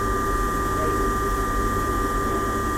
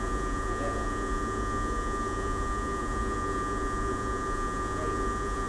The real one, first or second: first